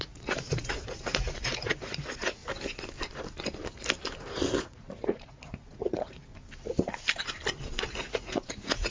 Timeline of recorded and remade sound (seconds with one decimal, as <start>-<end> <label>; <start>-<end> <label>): 0.0-2.4 remade; 2.4-4.6 recorded; 4.6-6.3 remade; 6.3-7.9 recorded; 7.9-8.9 remade